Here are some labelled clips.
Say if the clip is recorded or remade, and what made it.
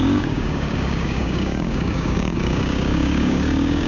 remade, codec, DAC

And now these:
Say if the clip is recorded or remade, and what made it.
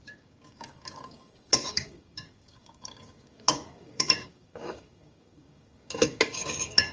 remade, codec, DAC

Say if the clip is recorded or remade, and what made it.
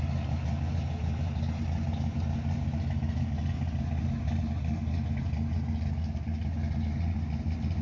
recorded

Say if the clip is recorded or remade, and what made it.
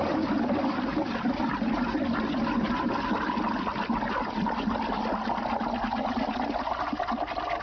recorded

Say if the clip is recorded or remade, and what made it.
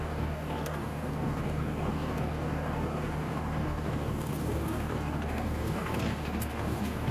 remade, codec, DAC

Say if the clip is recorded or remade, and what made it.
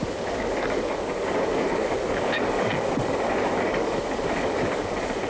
remade, codec, DAC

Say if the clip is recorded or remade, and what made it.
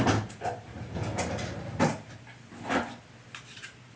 recorded